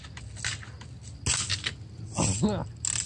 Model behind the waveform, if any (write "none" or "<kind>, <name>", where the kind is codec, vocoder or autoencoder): none